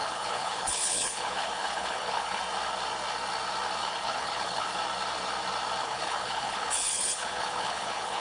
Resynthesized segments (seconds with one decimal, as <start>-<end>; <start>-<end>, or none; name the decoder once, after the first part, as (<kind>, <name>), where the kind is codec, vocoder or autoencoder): 0.0-2.4 (codec, HILCodec); 3.8-4.8; 5.8-8.2